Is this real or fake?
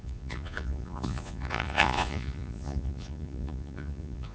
fake